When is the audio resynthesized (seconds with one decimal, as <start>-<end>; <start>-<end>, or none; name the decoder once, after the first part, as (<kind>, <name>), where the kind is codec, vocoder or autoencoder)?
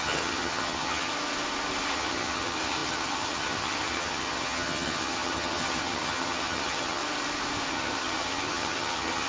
0.0-1.1 (vocoder, HiFi-GAN); 1.9-7.0; 7.7-9.3